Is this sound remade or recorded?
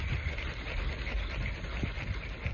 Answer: recorded